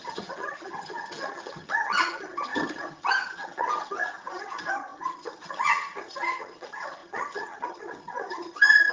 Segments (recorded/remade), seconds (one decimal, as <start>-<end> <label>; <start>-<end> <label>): 0.0-8.9 remade